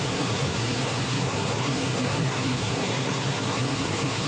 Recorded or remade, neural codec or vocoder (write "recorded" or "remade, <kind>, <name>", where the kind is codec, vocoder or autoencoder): remade, codec, SNAC